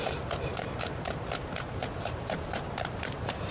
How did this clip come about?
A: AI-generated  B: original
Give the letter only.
A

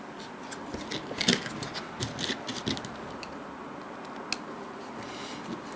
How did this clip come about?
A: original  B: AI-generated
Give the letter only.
A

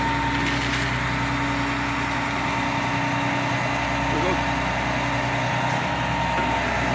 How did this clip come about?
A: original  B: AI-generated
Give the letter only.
A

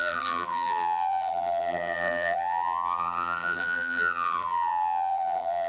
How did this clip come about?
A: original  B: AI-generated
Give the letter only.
B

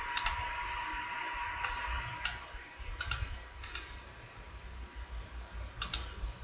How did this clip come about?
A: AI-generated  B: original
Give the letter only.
A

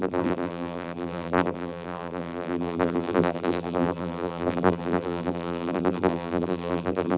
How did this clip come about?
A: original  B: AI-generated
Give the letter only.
B